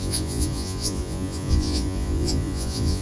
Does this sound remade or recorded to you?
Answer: remade